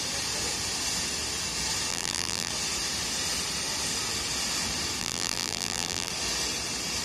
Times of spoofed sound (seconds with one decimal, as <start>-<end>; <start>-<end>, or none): 1.9-2.5; 5.0-6.1